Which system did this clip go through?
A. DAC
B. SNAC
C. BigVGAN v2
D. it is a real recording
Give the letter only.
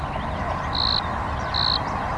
D